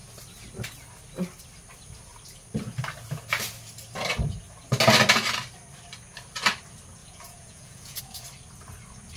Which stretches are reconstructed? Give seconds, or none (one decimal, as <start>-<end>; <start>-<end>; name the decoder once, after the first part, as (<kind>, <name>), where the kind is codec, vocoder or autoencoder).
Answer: 7.0-8.0 (vocoder, Vocos)